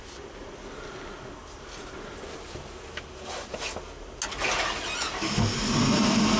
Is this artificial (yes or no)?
no